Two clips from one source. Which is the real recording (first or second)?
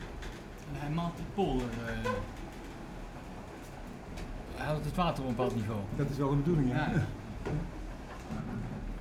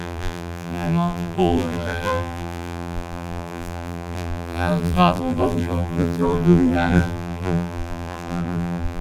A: first